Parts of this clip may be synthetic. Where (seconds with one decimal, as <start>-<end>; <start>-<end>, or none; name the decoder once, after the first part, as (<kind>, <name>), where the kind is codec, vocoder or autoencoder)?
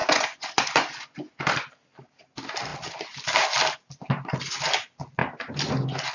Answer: 0.0-1.4 (vocoder, Vocos)